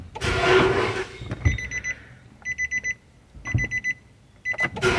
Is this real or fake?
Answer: real